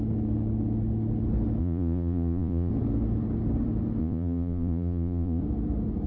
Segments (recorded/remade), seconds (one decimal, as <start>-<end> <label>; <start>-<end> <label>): 0.0-1.6 recorded; 1.6-2.7 remade; 2.7-4.0 recorded; 4.0-5.4 remade; 5.4-6.1 recorded